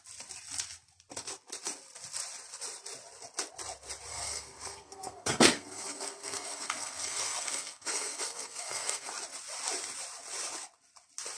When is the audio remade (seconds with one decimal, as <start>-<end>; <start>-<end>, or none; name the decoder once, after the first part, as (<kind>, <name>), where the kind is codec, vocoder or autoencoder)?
4.1-9.1 (codec, SNAC)